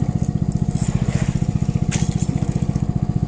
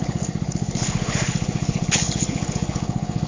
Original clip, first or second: first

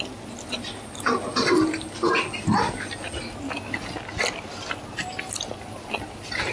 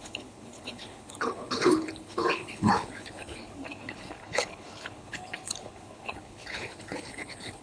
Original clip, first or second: first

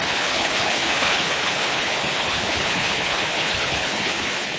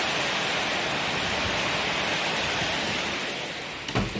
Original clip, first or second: second